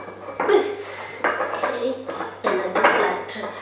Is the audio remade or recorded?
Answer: recorded